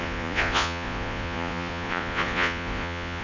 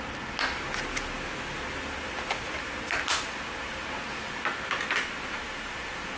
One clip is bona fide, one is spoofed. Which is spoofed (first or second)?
first